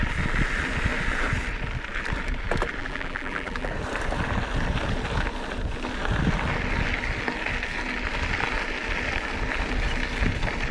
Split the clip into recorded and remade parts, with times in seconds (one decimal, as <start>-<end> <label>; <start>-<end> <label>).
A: 0.0-2.8 recorded; 2.8-3.7 remade; 3.7-10.7 recorded